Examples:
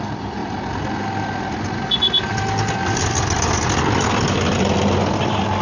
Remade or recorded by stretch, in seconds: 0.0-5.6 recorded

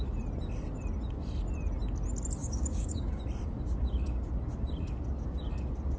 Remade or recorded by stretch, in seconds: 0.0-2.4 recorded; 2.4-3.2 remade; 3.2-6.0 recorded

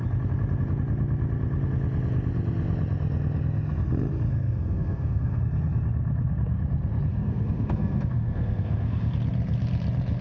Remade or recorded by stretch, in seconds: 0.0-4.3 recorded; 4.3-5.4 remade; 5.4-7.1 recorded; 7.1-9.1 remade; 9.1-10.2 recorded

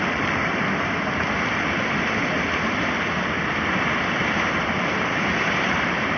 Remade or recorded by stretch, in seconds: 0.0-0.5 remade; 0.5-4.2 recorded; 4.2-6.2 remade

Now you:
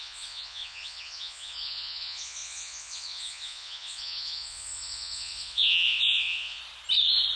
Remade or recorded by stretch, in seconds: 0.0-6.6 remade; 6.6-7.4 recorded

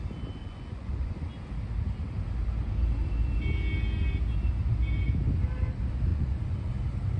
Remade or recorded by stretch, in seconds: 0.0-0.4 recorded; 0.4-1.3 remade; 1.3-6.1 recorded; 6.1-6.7 remade; 6.7-7.2 recorded

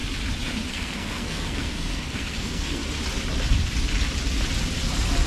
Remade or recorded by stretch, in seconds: 0.0-0.7 recorded; 0.7-2.8 remade; 2.8-5.3 recorded